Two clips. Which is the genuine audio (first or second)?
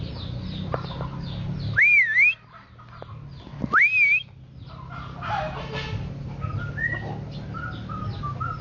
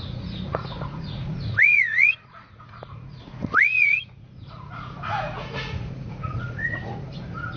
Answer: first